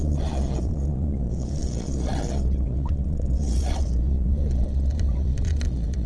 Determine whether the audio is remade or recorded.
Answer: remade